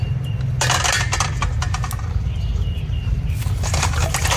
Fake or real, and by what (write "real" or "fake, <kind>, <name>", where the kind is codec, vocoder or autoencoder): real